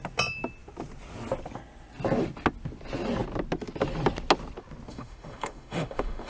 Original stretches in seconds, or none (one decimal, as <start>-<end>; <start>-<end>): 0.0-4.9